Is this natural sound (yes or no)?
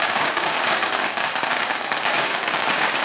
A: no